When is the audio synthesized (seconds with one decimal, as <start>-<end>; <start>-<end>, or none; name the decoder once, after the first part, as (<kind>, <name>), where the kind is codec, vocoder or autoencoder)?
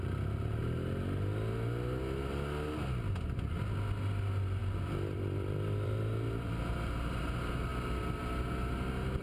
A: 4.6-7.2 (vocoder, BigVGAN v2)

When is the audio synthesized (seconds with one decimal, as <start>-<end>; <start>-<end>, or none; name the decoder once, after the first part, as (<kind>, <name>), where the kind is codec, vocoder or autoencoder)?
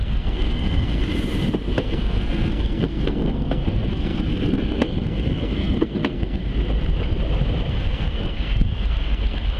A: 0.0-1.0 (codec, SNAC); 1.8-6.5; 7.7-9.6